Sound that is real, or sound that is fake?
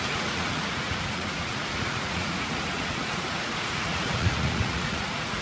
fake